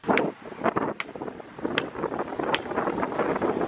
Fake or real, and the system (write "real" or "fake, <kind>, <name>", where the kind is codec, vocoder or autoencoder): real